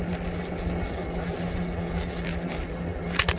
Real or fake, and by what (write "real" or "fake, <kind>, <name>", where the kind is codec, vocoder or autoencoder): real